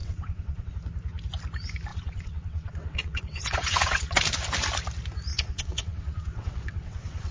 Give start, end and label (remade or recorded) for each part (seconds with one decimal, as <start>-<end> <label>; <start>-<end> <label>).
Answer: 0.0-0.7 remade; 0.7-1.9 recorded; 1.9-4.2 remade; 4.2-5.3 recorded; 5.3-7.3 remade

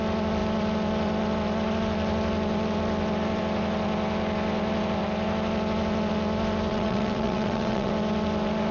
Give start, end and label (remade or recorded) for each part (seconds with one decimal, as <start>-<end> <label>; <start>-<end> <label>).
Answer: 0.0-6.7 recorded; 6.7-7.9 remade; 7.9-8.7 recorded

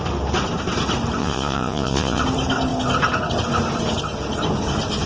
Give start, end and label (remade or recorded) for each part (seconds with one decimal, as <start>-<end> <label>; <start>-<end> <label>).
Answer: 0.0-1.2 recorded; 1.2-2.2 remade; 2.2-5.1 recorded

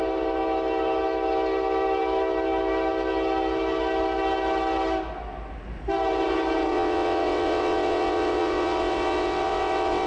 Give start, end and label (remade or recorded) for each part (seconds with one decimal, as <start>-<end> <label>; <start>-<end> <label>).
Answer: 0.0-6.7 recorded; 6.7-10.1 remade

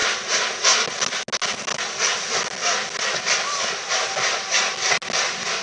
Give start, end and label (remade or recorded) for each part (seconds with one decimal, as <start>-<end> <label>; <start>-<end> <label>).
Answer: 0.0-5.6 recorded

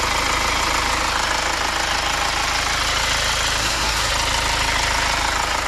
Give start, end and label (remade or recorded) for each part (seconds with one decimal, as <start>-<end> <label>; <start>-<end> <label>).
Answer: 0.0-3.6 recorded; 3.6-4.1 remade; 4.1-5.7 recorded

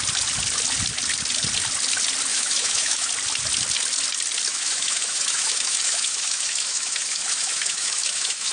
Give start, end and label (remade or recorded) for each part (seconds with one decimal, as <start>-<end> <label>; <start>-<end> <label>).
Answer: 0.0-2.3 recorded; 2.3-3.1 remade; 3.1-4.5 recorded; 4.5-8.5 remade